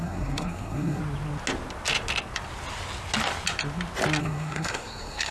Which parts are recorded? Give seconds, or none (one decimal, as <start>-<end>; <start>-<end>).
1.0-4.2